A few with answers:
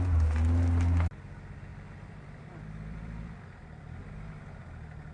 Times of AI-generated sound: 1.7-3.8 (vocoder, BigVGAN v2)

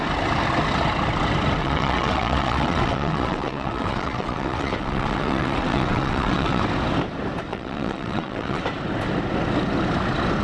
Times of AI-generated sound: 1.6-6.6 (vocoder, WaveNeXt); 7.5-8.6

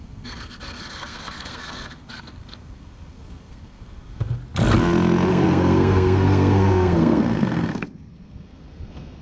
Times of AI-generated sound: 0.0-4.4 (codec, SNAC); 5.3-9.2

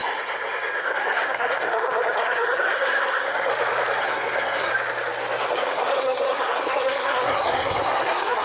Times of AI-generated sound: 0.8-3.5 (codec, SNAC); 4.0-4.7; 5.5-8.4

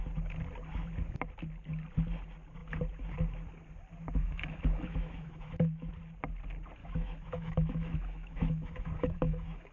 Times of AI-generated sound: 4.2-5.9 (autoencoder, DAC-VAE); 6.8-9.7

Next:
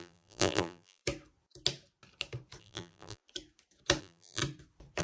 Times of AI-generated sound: 0.0-1.0 (vocoder, BigVGAN v2); 2.6-3.2; 4.0-4.4